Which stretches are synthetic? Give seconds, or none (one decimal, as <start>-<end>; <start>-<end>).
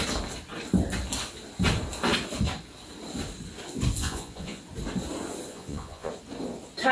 4.0-4.6; 5.5-6.1